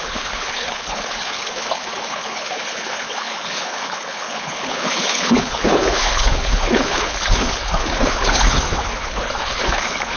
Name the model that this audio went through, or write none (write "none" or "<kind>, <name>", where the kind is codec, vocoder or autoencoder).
codec, HILCodec